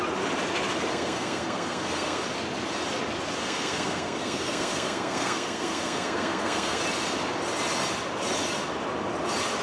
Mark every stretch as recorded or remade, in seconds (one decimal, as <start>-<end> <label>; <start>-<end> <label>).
0.0-0.9 recorded; 0.9-2.2 remade; 2.2-3.4 recorded; 3.4-6.8 remade; 6.8-9.6 recorded